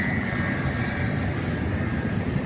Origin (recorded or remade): recorded